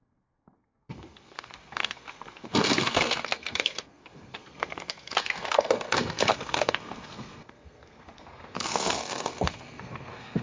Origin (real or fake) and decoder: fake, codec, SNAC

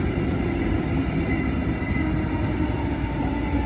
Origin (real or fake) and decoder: real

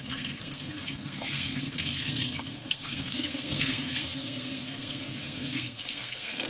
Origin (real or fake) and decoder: fake, codec, SNAC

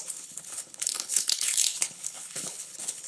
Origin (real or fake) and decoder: fake, codec, HILCodec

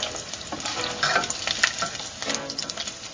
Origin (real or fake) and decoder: fake, vocoder, BigVGAN v2